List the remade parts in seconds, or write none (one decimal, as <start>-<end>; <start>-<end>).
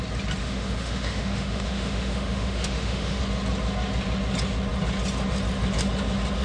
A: 0.4-3.2